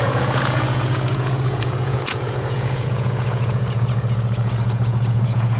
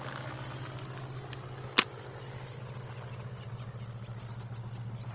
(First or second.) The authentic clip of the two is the second